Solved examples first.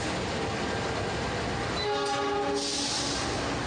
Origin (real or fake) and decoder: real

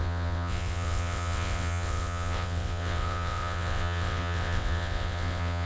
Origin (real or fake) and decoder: fake, vocoder, WaveNeXt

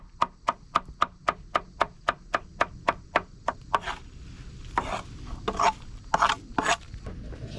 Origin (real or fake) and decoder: real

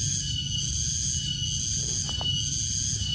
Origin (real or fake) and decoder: real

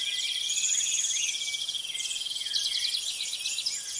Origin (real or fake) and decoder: real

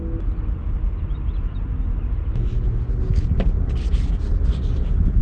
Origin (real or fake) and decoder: real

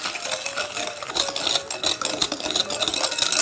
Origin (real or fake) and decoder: real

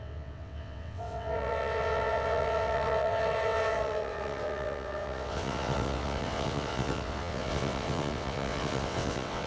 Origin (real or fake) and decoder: fake, vocoder, WaveNeXt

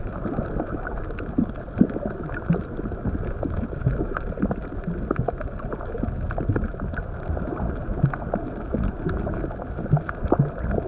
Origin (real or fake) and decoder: real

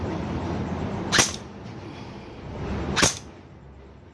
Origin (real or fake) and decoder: real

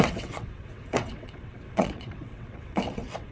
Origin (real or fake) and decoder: fake, vocoder, WaveNeXt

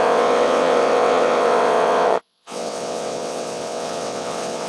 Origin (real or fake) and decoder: fake, vocoder, WaveNeXt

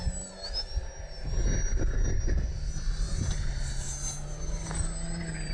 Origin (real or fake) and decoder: real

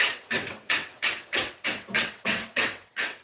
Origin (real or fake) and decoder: fake, vocoder, WaveNeXt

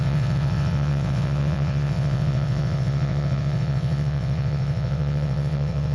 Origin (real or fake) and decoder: fake, vocoder, WaveNeXt